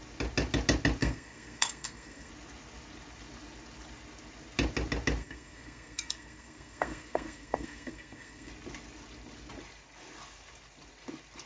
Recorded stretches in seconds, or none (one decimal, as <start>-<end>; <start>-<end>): 0.0-1.0; 2.3-5.2; 8.5-11.5